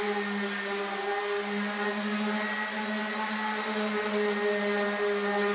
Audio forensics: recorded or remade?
recorded